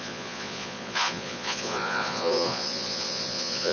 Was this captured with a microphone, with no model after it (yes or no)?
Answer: no